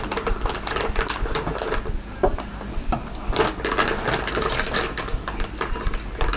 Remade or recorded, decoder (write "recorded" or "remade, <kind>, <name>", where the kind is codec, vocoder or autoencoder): remade, vocoder, BigVGAN v2